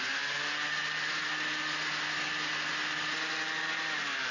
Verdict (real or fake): real